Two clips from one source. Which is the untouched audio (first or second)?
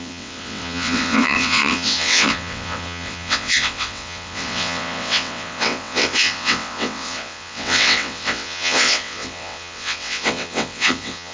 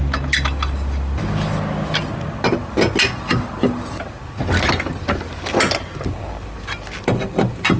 second